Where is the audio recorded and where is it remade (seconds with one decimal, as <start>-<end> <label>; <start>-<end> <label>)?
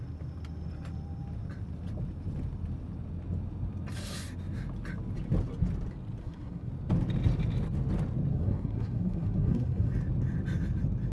0.0-6.2 recorded; 6.2-6.7 remade; 6.7-8.3 recorded; 8.3-9.9 remade; 9.9-11.1 recorded